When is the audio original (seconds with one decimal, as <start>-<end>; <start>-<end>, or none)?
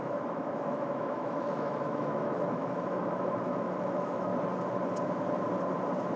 4.3-6.2